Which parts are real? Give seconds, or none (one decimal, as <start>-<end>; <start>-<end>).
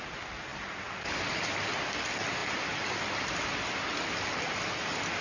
0.0-5.2